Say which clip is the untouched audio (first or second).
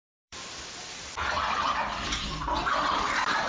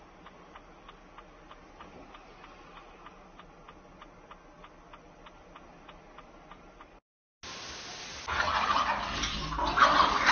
second